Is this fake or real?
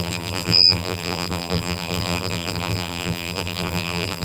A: fake